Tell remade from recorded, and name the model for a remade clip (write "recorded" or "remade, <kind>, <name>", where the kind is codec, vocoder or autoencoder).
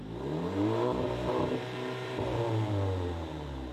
remade, vocoder, BigVGAN v2